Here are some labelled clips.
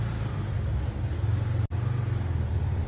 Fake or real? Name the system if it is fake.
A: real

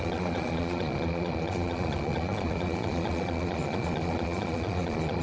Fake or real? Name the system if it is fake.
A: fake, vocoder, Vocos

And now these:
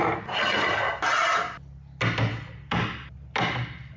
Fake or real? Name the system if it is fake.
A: real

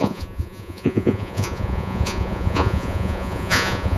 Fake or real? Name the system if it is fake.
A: fake, vocoder, Vocos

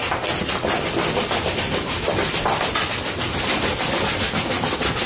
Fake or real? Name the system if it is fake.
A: real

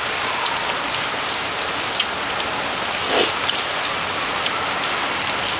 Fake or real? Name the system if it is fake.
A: real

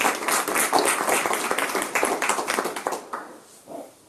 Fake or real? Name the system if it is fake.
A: real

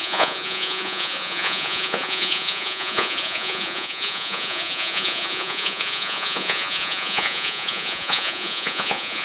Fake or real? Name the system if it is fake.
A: fake, vocoder, Vocos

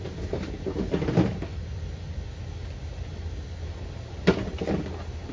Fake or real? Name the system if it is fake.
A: real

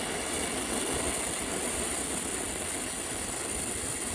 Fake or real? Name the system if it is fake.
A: real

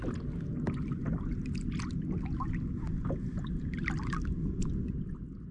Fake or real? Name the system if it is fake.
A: real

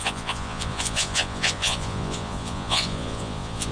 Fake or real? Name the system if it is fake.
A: fake, vocoder, Vocos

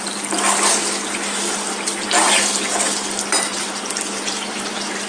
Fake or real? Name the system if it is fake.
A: real